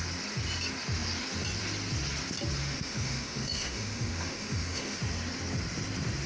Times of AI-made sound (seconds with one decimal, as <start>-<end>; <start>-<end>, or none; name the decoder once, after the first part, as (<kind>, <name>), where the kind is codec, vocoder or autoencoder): 2.6-5.0 (autoencoder, DAC-VAE)